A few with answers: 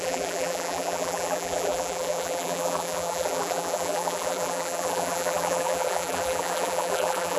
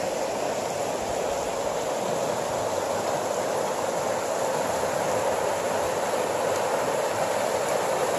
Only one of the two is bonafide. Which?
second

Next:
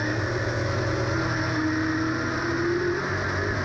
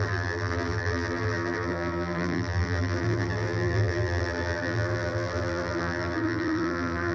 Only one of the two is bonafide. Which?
first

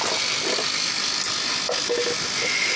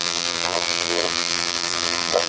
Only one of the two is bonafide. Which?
first